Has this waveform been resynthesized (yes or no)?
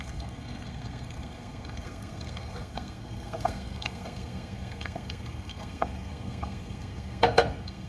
yes